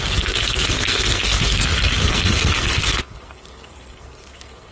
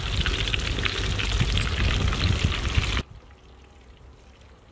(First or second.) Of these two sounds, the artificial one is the first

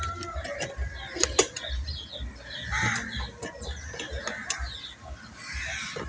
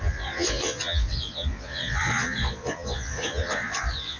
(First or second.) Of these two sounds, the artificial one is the second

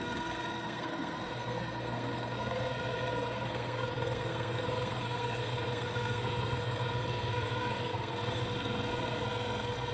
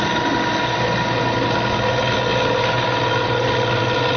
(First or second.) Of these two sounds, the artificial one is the first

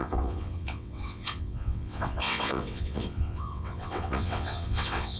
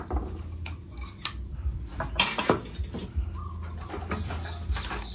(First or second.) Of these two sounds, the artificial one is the first